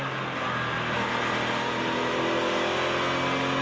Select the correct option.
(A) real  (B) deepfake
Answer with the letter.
A